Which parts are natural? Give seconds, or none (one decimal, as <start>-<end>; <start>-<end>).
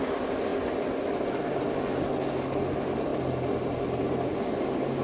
0.0-5.0